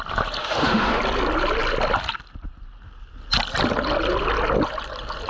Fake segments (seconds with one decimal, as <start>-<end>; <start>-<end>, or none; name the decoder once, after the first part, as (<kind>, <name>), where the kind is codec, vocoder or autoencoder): 0.4-1.0 (autoencoder, DAC-VAE)

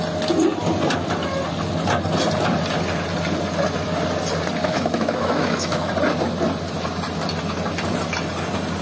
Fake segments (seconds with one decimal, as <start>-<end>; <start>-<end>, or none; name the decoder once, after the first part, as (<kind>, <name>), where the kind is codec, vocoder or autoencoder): 4.6-5.9 (autoencoder, DAC-VAE)

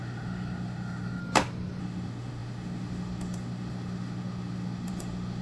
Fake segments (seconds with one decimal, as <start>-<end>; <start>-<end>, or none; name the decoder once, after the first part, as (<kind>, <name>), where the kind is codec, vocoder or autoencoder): 0.0-1.2 (autoencoder, DAC-VAE); 1.8-5.4

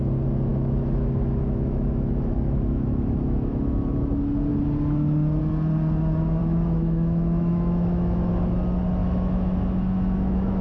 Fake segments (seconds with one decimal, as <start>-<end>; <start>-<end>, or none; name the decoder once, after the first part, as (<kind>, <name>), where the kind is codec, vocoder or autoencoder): 0.5-3.7 (autoencoder, DAC-VAE); 6.4-8.3; 9.0-10.6

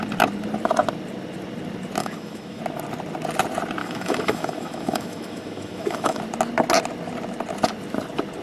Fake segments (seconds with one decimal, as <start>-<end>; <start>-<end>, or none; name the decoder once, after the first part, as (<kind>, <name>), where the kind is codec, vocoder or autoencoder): 2.0-2.6 (autoencoder, DAC-VAE); 3.8-6.2

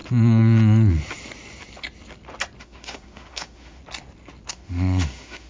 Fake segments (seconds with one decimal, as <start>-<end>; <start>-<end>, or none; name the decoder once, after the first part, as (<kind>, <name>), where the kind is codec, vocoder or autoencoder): 2.6-3.8 (autoencoder, DAC-VAE); 4.5-5.5

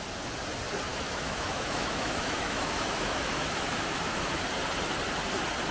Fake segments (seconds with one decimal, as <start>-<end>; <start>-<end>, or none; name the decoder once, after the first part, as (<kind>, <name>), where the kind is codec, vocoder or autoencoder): 0.9-4.3 (autoencoder, DAC-VAE)